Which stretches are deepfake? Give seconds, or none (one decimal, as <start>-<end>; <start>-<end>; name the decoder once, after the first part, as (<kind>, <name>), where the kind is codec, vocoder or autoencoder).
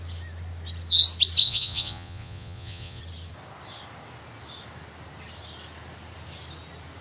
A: 1.4-3.0 (vocoder, Vocos)